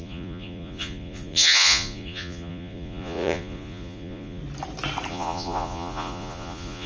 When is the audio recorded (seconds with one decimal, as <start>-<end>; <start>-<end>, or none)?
4.4-5.1